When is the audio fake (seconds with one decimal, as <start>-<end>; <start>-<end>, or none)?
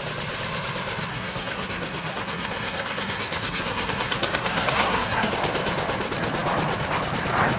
1.1-5.3